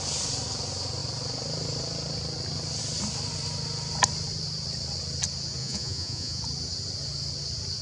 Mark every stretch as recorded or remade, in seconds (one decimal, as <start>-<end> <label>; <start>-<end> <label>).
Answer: 0.0-5.6 recorded; 5.6-6.4 remade; 6.4-7.8 recorded